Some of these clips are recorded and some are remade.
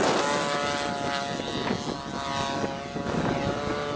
recorded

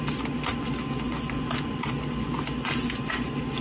recorded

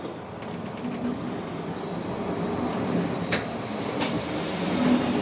recorded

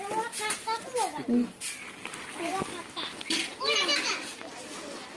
recorded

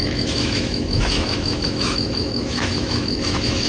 remade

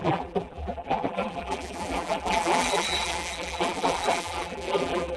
remade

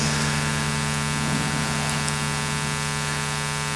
recorded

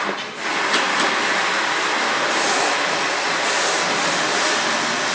recorded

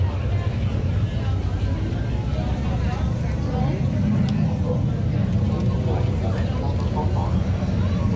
recorded